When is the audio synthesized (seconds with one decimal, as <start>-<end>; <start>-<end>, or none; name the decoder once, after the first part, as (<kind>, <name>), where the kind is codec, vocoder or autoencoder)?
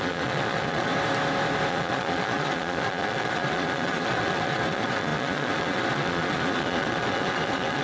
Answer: 0.0-0.9 (vocoder, Vocos); 1.7-7.8